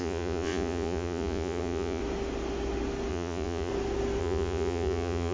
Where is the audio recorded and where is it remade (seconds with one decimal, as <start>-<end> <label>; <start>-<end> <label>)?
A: 0.0-2.0 remade; 2.0-3.1 recorded; 3.1-3.7 remade; 3.7-4.2 recorded; 4.2-5.3 remade